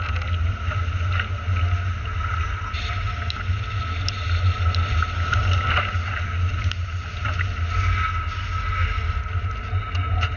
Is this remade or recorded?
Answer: recorded